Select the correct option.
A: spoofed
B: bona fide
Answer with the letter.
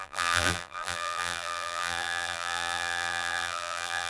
A